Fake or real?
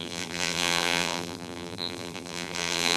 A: fake